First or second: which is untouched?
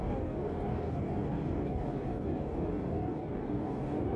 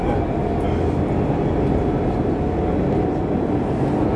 second